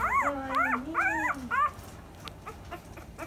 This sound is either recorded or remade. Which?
recorded